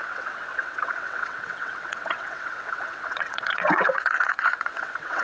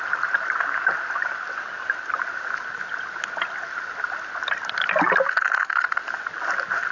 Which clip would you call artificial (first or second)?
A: first